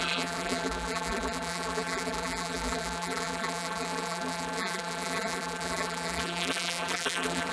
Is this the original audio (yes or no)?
no